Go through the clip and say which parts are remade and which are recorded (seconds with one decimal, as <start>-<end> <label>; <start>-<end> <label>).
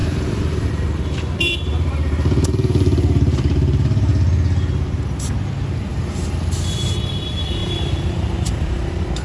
0.0-4.1 remade; 4.1-7.1 recorded; 7.1-9.2 remade